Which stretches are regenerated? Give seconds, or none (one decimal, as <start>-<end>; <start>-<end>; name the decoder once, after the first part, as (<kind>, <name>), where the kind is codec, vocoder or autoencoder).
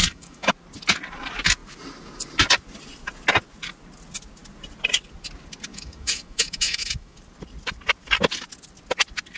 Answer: 0.0-0.5 (autoencoder, DAC-VAE); 5.7-7.2